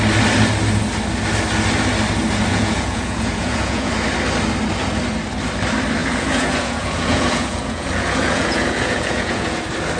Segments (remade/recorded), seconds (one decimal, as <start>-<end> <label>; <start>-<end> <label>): 0.0-2.5 recorded; 2.5-3.9 remade; 3.9-6.0 recorded; 6.0-9.6 remade; 9.6-10.0 recorded

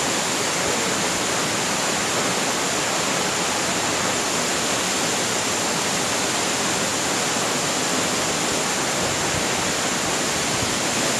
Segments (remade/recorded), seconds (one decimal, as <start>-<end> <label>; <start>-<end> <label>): 0.0-11.2 recorded

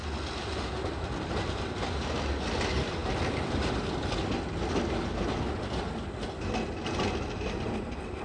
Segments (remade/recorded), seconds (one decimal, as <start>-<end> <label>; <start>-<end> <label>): 0.0-8.2 recorded